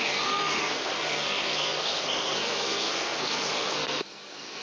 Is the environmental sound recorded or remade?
remade